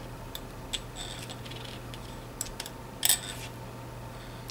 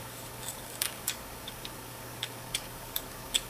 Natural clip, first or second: first